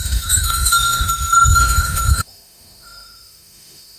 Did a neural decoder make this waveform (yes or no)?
yes